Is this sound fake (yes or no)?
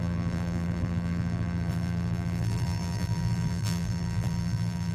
yes